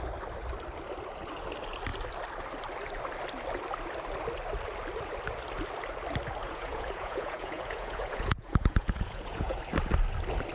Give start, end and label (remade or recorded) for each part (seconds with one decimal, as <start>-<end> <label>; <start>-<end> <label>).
0.0-6.4 recorded; 6.4-9.6 remade; 9.6-10.5 recorded